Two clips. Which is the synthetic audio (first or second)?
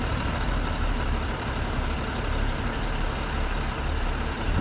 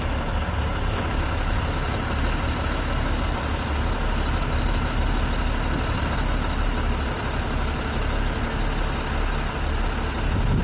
first